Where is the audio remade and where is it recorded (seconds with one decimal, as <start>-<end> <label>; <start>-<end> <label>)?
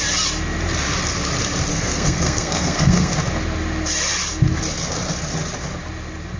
0.0-1.7 recorded; 1.7-3.1 remade; 3.1-6.4 recorded